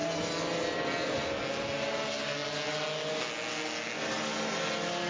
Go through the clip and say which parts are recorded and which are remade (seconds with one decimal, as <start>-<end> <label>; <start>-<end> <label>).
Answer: 0.0-5.1 recorded